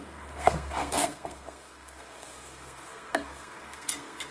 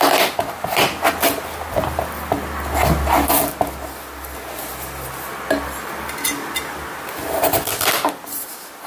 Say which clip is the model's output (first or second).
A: first